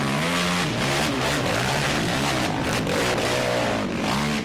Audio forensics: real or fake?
real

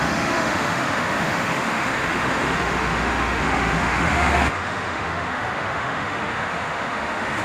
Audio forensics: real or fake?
fake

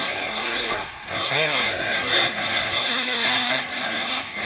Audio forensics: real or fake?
fake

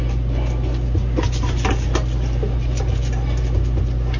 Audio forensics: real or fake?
real